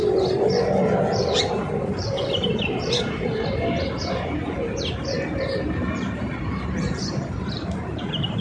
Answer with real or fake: fake